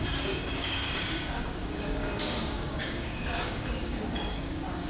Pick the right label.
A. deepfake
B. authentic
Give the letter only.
A